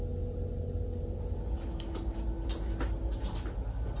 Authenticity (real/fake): real